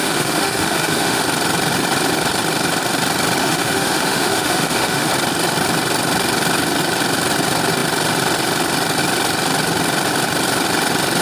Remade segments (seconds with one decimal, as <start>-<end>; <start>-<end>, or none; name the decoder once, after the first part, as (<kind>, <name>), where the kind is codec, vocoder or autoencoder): 0.0-1.2 (autoencoder, DAC-VAE); 3.4-5.1